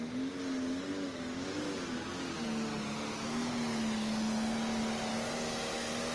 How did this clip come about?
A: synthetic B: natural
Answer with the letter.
B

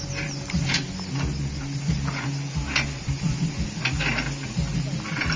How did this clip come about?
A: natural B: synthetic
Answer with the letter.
A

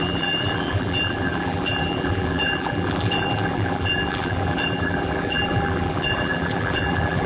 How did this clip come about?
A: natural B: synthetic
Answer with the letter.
B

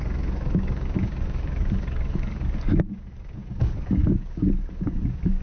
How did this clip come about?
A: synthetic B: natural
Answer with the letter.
A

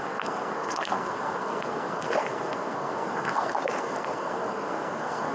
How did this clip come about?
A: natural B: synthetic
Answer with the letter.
B